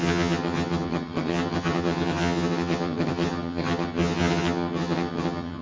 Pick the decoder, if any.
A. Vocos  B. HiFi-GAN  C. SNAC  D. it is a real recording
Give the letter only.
B